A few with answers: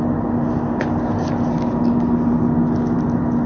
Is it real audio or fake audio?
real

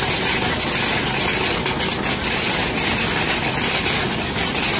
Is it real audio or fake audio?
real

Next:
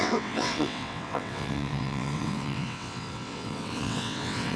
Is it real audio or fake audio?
fake